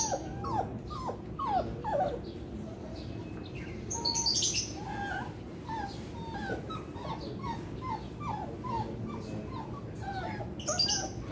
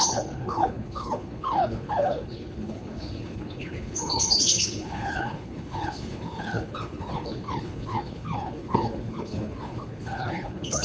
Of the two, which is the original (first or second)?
first